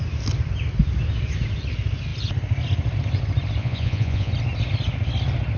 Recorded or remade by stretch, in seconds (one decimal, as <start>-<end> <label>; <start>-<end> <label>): 0.0-3.6 recorded; 3.6-4.3 remade; 4.3-5.6 recorded